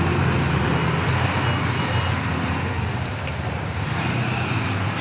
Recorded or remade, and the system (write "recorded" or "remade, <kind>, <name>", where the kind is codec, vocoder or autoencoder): recorded